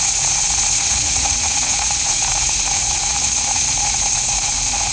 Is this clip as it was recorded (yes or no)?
no